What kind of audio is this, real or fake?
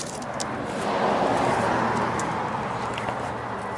real